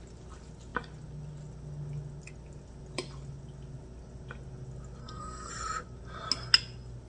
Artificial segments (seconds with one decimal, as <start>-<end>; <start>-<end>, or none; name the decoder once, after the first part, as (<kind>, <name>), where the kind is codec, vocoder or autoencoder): 5.0-5.5 (codec, SNAC)